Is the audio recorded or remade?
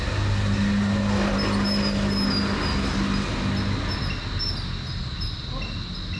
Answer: recorded